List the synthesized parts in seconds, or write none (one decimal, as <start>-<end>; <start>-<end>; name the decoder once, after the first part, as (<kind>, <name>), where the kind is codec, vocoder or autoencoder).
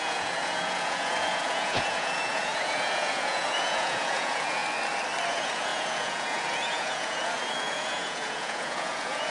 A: 0.0-4.6 (vocoder, Vocos); 5.3-9.3